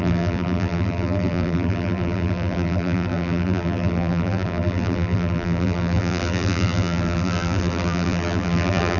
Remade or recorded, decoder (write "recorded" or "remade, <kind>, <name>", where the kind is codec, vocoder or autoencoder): remade, vocoder, BigVGAN v2